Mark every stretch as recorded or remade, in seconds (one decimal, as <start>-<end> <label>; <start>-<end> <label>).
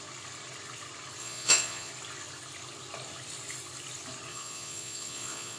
0.0-1.2 recorded; 1.2-1.9 remade; 1.9-4.3 recorded; 4.3-5.6 remade